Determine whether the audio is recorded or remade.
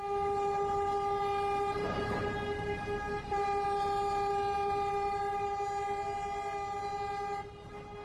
recorded